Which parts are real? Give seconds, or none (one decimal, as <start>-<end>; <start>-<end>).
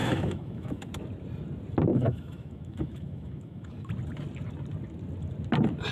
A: 0.9-1.9; 3.9-5.9